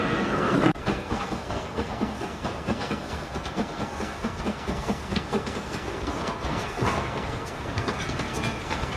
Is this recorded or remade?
remade